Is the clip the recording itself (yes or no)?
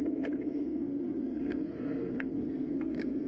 no